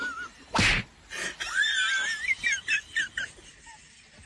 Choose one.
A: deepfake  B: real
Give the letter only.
B